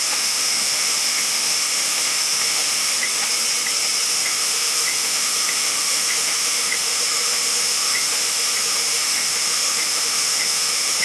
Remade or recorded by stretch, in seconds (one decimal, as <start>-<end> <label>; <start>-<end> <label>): 0.0-3.2 remade; 3.2-4.1 recorded; 4.1-11.0 remade